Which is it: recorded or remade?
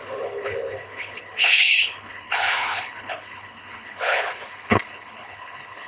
remade